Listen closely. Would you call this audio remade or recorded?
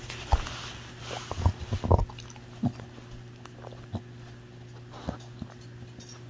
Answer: recorded